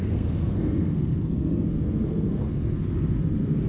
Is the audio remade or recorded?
remade